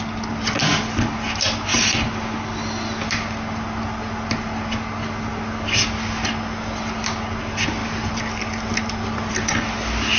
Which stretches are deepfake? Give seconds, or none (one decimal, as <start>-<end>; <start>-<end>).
none